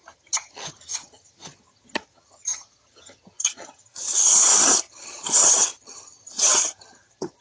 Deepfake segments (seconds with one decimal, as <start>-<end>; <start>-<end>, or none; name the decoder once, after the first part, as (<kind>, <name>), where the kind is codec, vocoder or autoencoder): 0.0-7.4 (vocoder, HiFi-GAN)